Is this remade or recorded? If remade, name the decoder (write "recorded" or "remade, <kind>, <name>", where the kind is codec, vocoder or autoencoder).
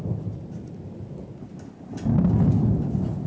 recorded